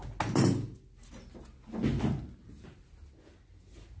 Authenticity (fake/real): real